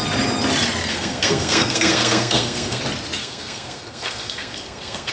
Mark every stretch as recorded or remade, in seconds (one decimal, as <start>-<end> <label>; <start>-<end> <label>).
0.0-0.9 recorded; 0.9-2.8 remade; 2.8-3.2 recorded; 3.2-5.1 remade